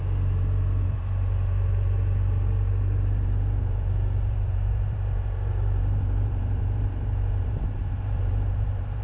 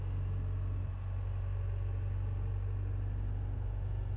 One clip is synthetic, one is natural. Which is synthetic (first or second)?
first